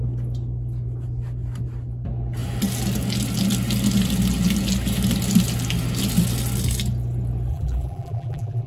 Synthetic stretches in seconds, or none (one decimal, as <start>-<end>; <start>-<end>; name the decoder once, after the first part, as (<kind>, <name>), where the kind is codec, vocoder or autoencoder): 7.5-8.7 (vocoder, BigVGAN v2)